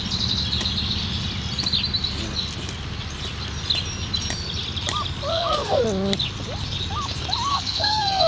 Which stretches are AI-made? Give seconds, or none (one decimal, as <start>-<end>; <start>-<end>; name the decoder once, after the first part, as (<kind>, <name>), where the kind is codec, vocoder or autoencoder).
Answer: 5.3-5.8 (codec, SNAC); 7.5-8.3